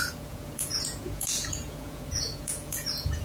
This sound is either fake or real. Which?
fake